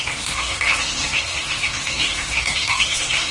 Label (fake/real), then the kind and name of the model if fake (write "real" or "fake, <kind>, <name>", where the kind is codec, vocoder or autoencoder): fake, codec, SNAC